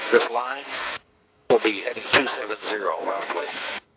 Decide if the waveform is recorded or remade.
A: remade